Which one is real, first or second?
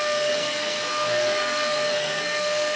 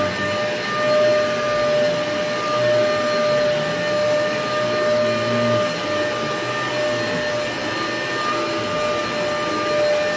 second